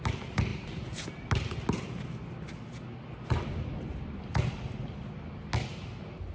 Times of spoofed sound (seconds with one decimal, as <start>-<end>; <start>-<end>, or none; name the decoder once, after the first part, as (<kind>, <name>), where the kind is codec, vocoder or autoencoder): none